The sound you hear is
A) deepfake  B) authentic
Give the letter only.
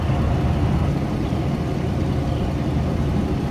B